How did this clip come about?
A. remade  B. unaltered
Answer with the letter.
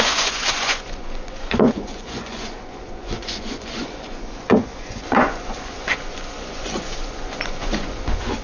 A